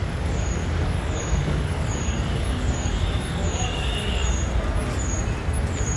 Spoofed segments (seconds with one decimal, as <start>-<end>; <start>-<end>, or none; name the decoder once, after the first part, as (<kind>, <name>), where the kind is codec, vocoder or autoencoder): 0.0-4.2 (codec, DAC)